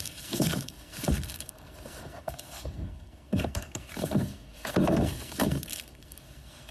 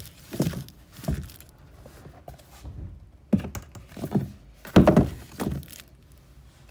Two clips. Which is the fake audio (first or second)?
first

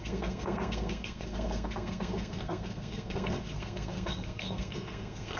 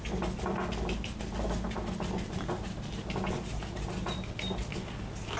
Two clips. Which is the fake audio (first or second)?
first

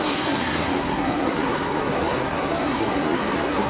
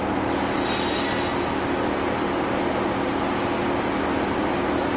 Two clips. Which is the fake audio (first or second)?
first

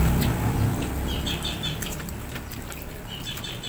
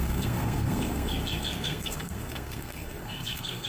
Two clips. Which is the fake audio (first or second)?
second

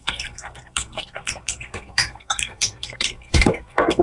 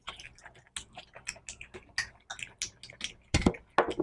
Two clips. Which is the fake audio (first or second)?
first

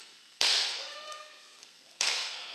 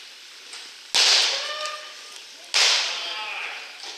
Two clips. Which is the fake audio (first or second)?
first